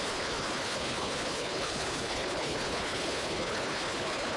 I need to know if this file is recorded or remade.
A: remade